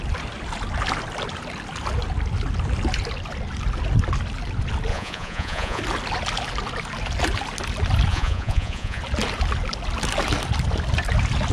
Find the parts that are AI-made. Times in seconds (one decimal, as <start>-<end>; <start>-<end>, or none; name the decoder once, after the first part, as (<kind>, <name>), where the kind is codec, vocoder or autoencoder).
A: 4.9-5.8 (vocoder, Vocos); 8.1-9.0